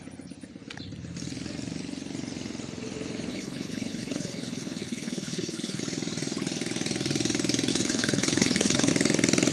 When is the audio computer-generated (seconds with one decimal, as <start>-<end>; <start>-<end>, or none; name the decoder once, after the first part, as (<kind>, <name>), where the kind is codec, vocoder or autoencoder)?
3.3-5.8 (codec, HILCodec); 7.7-8.9